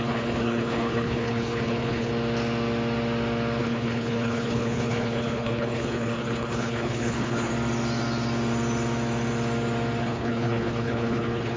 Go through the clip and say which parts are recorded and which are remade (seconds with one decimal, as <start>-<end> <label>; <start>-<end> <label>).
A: 0.0-2.1 remade; 2.1-3.6 recorded; 3.6-7.5 remade; 7.5-10.0 recorded; 10.0-11.6 remade